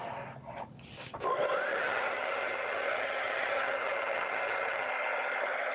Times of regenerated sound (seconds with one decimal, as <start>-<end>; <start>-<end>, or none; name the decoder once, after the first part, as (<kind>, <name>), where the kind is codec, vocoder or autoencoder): 1.7-4.9 (vocoder, HiFi-GAN)